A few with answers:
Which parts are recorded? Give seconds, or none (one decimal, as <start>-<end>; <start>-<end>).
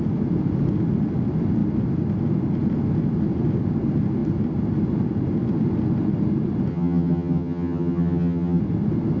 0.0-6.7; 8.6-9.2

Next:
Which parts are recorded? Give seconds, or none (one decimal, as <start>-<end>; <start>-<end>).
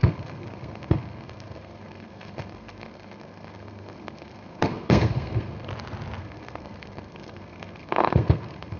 5.7-6.2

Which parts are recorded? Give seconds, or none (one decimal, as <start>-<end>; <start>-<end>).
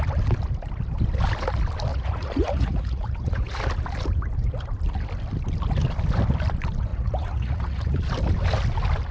0.0-1.9; 3.6-6.9; 8.0-9.1